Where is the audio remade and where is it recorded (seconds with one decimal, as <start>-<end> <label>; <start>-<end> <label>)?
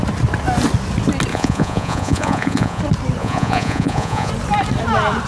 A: 0.0-1.3 recorded; 1.3-2.8 remade; 2.8-3.2 recorded; 3.2-4.3 remade; 4.3-5.3 recorded